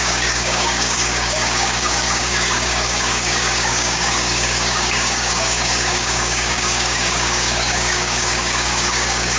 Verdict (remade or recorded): remade